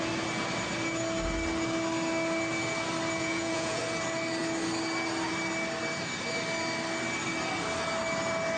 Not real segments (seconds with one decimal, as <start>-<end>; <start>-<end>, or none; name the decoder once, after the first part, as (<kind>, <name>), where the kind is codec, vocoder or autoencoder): 3.2-3.8 (vocoder, Vocos)